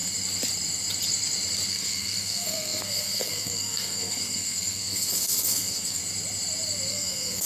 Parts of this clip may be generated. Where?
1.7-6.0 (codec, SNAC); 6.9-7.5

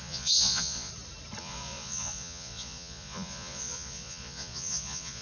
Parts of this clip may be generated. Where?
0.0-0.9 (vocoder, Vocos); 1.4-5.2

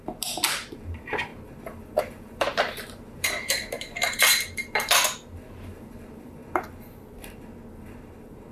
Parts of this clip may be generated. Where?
0.0-1.3 (vocoder, BigVGAN v2); 2.0-6.4

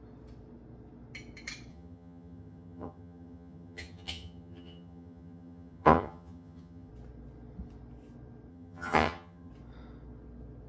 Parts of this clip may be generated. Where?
1.7-6.9 (vocoder, HiFi-GAN); 8.5-9.5